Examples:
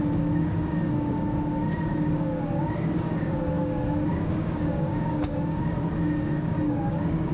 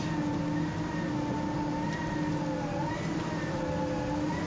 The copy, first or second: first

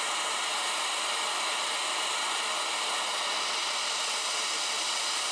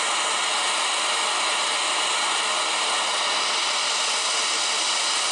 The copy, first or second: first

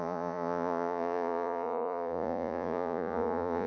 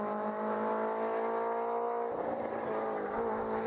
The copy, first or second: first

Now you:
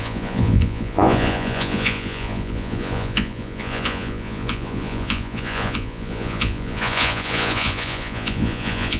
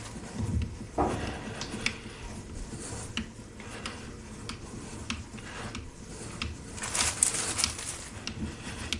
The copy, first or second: first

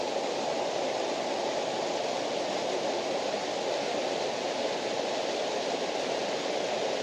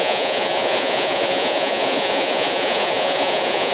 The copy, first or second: second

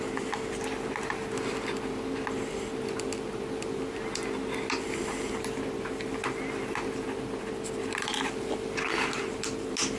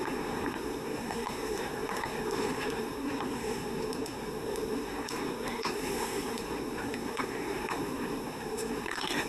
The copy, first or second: second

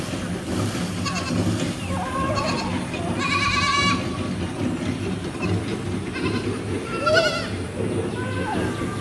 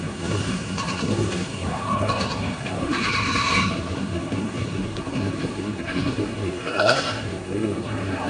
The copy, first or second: second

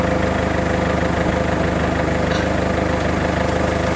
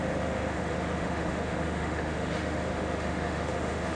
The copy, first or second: second